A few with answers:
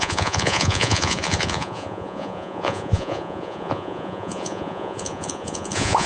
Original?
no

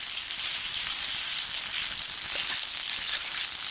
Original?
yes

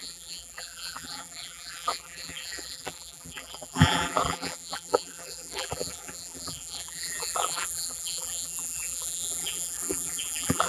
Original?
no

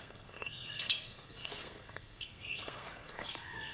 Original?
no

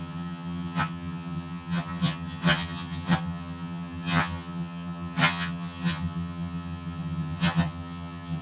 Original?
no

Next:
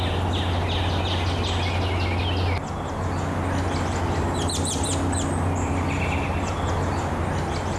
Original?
yes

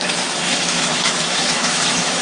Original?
no